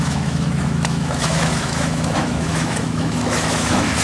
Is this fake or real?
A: fake